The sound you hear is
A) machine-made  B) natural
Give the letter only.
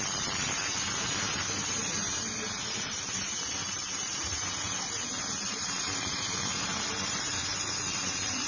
A